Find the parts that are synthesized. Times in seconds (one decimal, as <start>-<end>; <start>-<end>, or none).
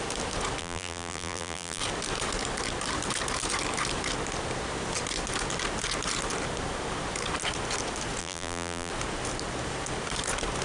0.6-1.8; 8.2-8.9